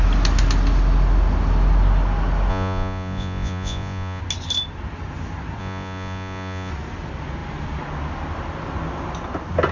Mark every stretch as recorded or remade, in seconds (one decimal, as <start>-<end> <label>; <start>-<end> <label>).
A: 0.0-2.5 recorded; 2.5-4.2 remade; 4.2-5.6 recorded; 5.6-6.7 remade; 6.7-9.7 recorded